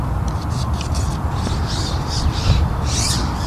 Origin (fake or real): real